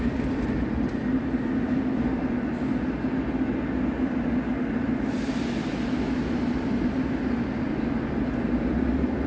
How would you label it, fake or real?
real